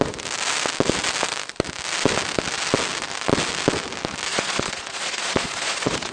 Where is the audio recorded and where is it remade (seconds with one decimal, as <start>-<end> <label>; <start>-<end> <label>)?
0.0-4.3 recorded; 4.3-6.1 remade